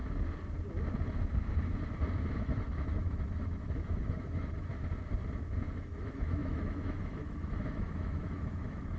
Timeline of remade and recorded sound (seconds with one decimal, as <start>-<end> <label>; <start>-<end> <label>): 0.0-2.4 recorded; 2.4-4.7 remade; 4.7-5.8 recorded; 5.8-9.0 remade